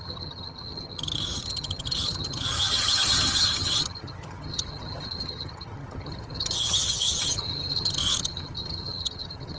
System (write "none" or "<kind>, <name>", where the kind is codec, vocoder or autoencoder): vocoder, HiFi-GAN